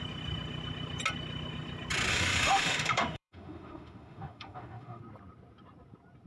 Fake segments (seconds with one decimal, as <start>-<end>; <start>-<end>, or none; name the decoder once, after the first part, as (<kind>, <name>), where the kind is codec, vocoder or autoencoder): 2.1-5.0 (autoencoder, DAC-VAE)

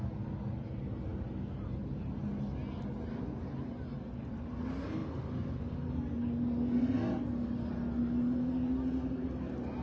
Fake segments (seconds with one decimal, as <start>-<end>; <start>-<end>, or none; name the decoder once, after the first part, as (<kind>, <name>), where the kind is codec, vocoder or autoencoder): none

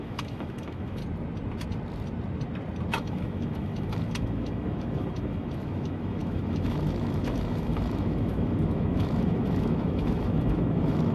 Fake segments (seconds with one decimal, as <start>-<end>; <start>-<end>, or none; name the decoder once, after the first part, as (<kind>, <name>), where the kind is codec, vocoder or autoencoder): 0.0-1.0 (autoencoder, DAC-VAE); 2.9-11.1

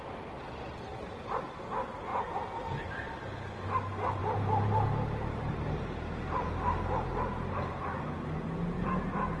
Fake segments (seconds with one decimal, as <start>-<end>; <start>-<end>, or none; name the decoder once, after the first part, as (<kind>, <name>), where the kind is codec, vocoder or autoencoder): 0.9-1.6 (vocoder, BigVGAN v2); 2.1-2.9; 4.2-7.6

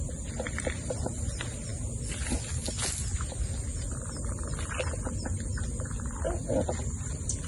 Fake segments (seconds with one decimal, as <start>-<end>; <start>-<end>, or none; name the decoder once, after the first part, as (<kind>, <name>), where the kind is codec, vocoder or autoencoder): none

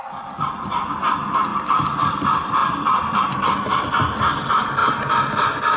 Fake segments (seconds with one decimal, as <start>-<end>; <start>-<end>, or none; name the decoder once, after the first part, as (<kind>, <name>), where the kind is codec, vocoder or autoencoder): 1.5-2.1 (vocoder, BigVGAN v2); 2.6-3.9

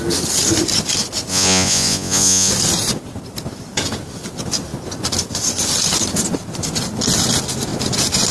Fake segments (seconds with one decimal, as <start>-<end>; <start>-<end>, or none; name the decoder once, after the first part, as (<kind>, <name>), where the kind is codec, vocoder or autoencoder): 1.3-2.5 (vocoder, Vocos)

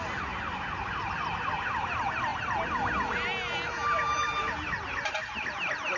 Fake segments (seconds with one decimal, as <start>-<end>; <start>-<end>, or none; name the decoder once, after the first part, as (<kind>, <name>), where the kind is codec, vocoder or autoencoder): none